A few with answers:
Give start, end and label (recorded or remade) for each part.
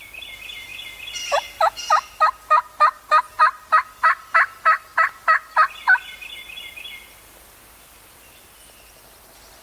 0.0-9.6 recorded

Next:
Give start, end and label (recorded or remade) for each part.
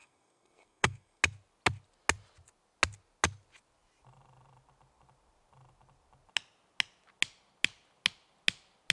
0.0-1.2 remade; 1.2-8.9 recorded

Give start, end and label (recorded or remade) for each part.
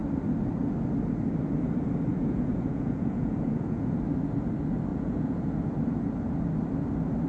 0.0-2.1 recorded; 2.1-4.0 remade; 4.0-4.9 recorded; 4.9-5.5 remade; 5.5-7.3 recorded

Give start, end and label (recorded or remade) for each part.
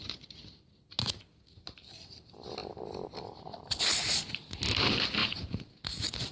0.0-5.2 recorded; 5.2-5.8 remade; 5.8-6.3 recorded